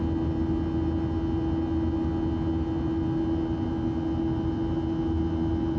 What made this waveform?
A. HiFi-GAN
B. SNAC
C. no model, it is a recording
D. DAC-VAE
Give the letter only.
C